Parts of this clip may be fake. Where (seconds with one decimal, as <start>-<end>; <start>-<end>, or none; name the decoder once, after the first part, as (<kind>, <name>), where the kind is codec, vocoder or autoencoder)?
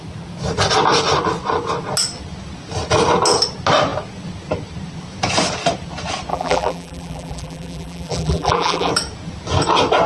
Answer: 6.3-8.9 (vocoder, BigVGAN v2)